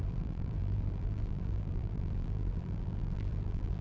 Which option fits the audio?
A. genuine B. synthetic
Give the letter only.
B